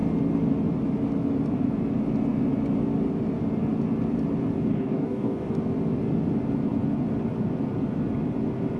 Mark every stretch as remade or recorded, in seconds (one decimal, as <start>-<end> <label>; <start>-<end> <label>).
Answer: 0.0-4.7 recorded; 4.7-5.5 remade; 5.5-8.8 recorded